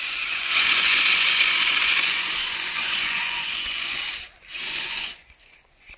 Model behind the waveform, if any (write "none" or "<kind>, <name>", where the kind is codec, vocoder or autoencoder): vocoder, Vocos